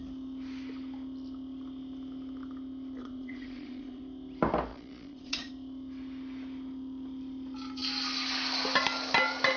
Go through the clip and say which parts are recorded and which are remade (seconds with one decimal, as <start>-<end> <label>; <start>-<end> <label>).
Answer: 0.0-3.0 recorded; 3.0-4.0 remade; 4.0-4.7 recorded; 4.7-5.5 remade; 5.5-9.6 recorded